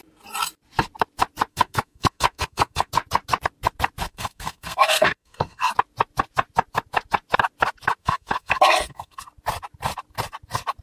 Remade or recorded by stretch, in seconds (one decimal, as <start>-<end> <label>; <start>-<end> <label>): 0.0-1.5 recorded; 1.5-2.9 remade; 2.9-4.0 recorded; 4.0-5.7 remade; 5.7-8.0 recorded; 8.0-9.2 remade; 9.2-10.8 recorded